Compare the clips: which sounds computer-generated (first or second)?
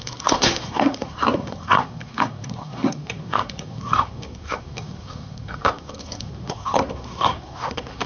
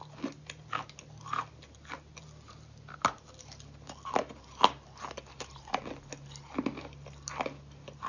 first